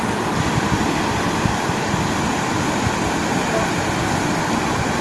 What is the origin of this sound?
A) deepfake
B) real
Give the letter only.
B